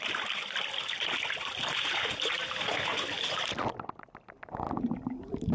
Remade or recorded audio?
recorded